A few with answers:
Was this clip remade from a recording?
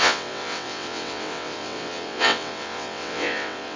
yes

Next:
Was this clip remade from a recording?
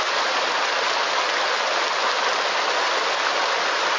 no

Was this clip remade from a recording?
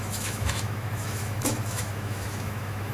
yes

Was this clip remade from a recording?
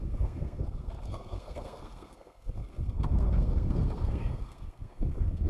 yes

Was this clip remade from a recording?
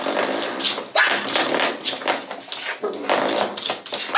no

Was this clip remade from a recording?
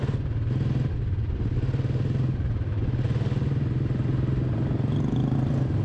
no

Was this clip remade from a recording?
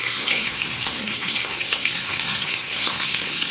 yes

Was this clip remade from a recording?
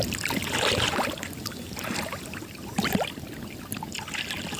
no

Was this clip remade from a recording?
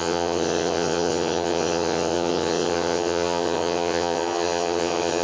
yes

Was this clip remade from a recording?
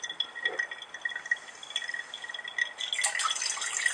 no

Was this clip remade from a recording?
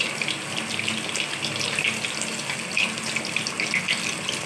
no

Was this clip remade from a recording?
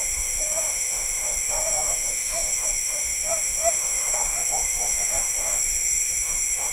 yes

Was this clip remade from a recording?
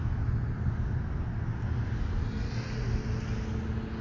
no